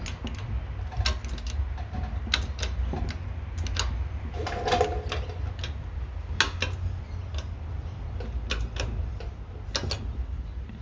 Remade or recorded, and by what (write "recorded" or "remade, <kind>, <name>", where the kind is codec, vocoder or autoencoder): recorded